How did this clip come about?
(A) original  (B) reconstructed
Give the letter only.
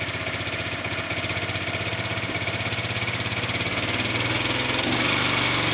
A